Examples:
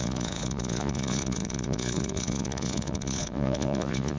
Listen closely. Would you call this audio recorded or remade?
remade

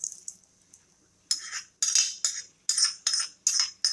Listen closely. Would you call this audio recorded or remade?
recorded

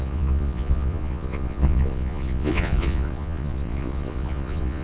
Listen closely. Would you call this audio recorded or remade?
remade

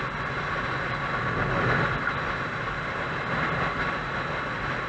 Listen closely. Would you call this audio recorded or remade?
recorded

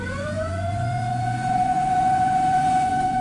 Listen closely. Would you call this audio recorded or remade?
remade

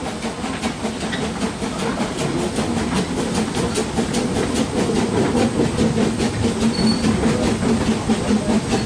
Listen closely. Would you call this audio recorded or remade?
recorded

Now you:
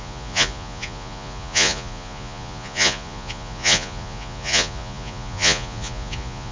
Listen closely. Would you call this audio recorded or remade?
remade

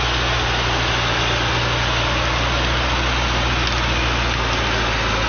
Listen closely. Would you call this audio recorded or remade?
recorded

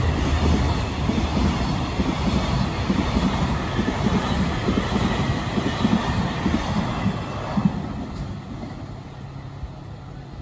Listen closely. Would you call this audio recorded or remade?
recorded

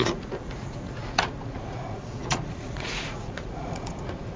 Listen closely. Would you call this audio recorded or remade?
remade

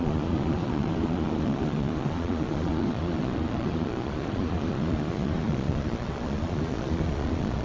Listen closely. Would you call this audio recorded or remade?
remade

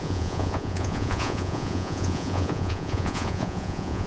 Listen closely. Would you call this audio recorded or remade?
remade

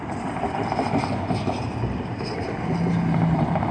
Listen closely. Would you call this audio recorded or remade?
recorded